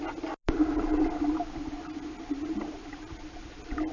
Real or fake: real